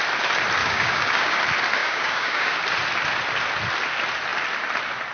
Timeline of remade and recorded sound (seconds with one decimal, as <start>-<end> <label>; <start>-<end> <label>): 0.0-0.6 recorded; 0.6-1.4 remade; 1.4-1.8 recorded; 1.8-2.6 remade; 2.6-5.1 recorded